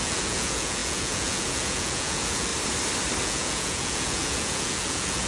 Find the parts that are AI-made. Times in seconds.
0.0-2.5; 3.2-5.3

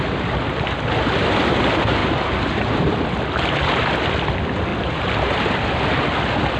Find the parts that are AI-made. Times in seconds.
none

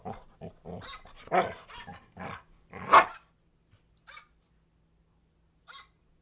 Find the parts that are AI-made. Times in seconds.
none

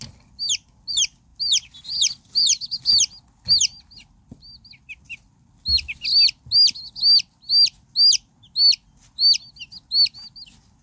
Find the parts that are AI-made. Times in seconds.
none

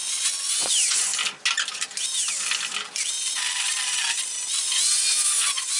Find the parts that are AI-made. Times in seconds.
0.0-1.1; 4.6-5.8

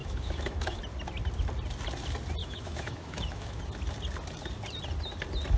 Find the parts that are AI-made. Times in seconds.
0.0-0.8; 2.4-3.6

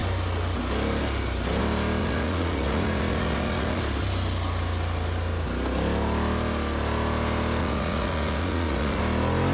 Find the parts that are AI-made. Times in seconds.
2.0-3.8; 7.6-9.0